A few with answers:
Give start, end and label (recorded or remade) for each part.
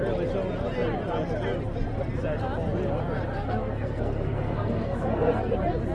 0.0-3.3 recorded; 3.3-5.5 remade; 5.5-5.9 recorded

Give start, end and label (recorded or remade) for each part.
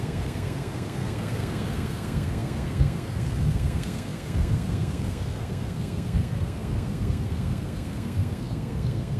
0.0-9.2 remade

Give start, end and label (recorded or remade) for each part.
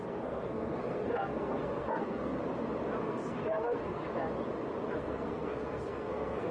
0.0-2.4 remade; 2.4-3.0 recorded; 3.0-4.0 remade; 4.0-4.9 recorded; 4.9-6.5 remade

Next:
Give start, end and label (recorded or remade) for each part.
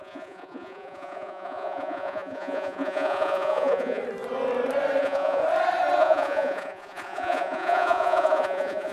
0.0-4.0 remade; 4.0-5.0 recorded; 5.0-5.4 remade; 5.4-6.0 recorded; 6.0-8.9 remade